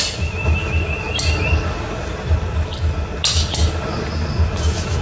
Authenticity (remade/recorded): recorded